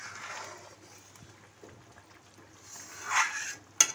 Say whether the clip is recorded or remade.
recorded